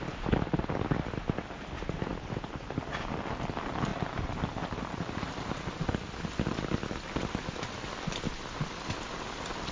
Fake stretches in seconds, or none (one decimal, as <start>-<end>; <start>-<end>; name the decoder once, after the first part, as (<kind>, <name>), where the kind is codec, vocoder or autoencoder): 3.9-5.6 (vocoder, BigVGAN v2)